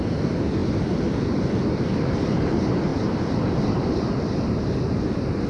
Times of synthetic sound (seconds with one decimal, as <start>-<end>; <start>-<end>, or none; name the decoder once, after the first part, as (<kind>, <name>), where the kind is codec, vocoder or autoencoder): 0.0-5.5 (vocoder, BigVGAN v2)